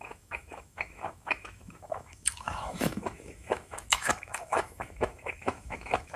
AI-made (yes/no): yes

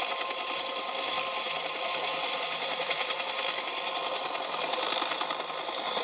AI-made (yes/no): no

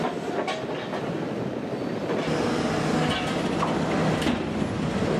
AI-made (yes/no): no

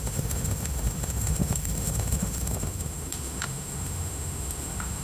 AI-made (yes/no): yes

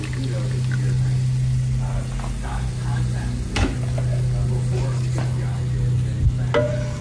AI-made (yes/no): no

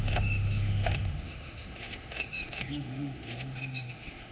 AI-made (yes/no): yes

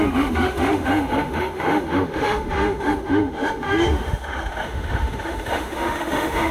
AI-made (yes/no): yes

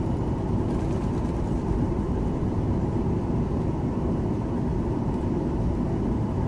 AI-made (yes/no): no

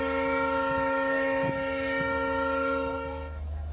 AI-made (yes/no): yes